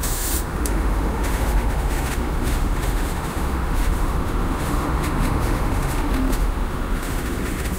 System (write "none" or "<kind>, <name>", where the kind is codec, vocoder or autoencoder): autoencoder, DAC-VAE